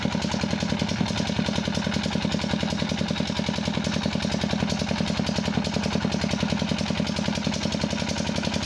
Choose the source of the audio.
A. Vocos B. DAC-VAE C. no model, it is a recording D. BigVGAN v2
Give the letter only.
C